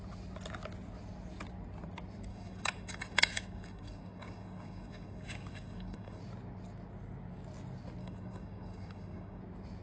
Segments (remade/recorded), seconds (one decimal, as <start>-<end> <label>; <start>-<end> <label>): 0.0-2.3 recorded; 2.3-6.2 remade; 6.2-8.0 recorded; 8.0-9.4 remade; 9.4-9.8 recorded